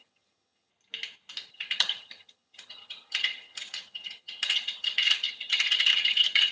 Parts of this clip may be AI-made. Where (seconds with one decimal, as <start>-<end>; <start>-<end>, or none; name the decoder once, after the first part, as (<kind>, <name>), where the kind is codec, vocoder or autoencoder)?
0.0-0.7 (vocoder, HiFi-GAN); 1.5-6.5